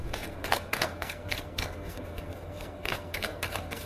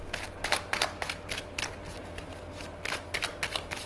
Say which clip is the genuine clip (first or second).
second